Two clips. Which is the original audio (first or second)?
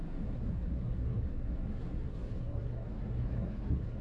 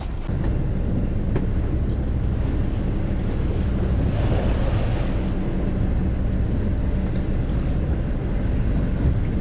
second